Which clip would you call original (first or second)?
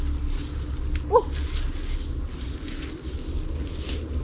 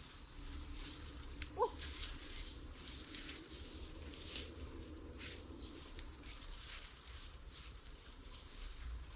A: first